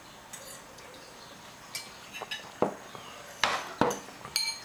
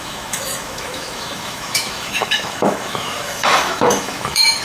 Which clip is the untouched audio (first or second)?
first